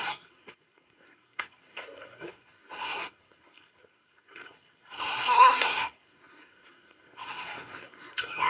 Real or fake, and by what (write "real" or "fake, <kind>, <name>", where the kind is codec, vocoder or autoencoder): fake, codec, SNAC